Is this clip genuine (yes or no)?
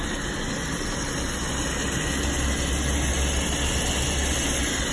yes